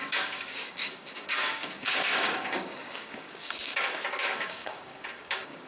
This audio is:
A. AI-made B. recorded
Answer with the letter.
A